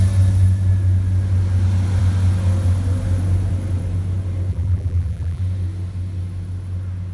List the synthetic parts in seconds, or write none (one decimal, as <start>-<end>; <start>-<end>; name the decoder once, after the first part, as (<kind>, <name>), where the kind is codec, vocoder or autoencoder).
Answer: 4.5-5.4 (vocoder, BigVGAN v2)